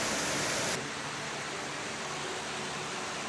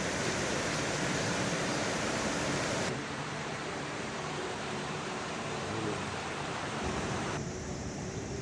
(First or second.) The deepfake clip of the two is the second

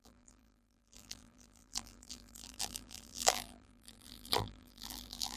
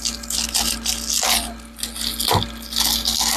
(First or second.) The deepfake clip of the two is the first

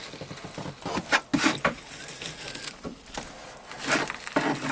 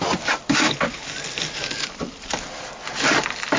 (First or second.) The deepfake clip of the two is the second